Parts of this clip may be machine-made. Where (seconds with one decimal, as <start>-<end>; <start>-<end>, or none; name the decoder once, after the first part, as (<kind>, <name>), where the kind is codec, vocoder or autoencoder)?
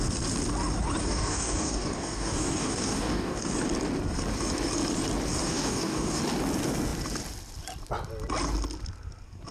1.0-3.4 (codec, DAC); 5.4-6.2